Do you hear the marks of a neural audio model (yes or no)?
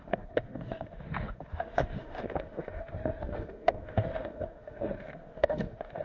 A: yes